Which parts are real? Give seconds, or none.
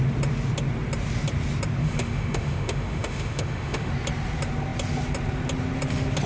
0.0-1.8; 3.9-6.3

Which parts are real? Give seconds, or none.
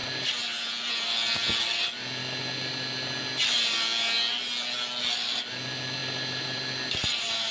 0.0-6.0; 6.6-7.5